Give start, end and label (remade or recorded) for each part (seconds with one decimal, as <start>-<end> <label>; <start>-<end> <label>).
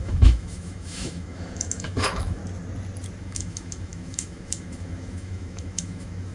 0.0-2.4 remade; 2.4-3.2 recorded; 3.2-6.3 remade